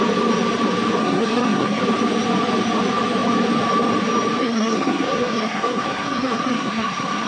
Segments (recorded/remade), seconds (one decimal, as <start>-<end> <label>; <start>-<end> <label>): 0.0-1.0 recorded; 1.0-1.8 remade; 1.8-4.4 recorded; 4.4-7.3 remade